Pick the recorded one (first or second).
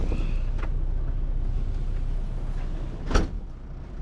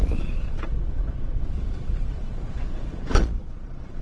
first